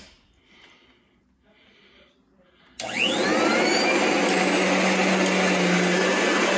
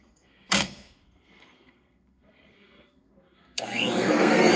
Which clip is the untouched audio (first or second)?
first